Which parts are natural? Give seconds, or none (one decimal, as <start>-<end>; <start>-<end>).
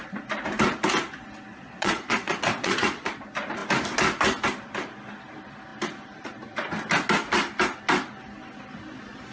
0.0-1.5; 3.2-9.3